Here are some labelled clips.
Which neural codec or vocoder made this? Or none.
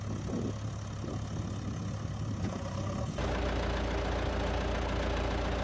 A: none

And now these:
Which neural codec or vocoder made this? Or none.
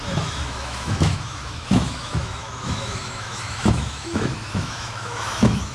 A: autoencoder, DAC-VAE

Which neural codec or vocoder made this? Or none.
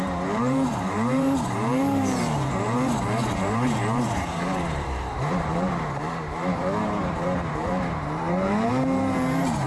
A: vocoder, BigVGAN v2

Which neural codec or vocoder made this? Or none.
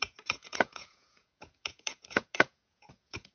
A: vocoder, Vocos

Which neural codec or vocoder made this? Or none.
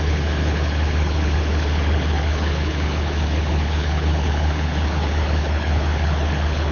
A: codec, HILCodec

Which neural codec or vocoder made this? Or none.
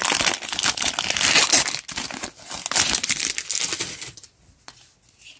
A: none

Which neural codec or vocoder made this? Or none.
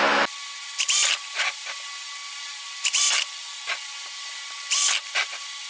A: none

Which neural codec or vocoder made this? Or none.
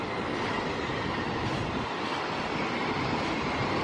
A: none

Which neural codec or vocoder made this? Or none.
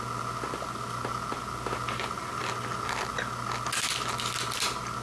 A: none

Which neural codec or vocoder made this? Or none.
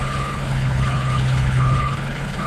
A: codec, HILCodec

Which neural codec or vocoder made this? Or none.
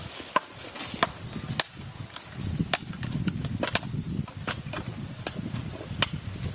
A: none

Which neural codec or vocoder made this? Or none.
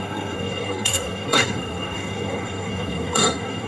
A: codec, SNAC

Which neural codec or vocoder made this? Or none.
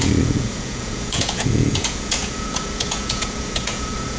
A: vocoder, Vocos